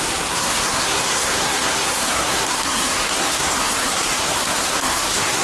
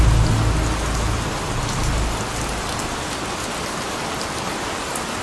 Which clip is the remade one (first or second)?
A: first